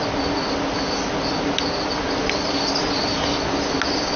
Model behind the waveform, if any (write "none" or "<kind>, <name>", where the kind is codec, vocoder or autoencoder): none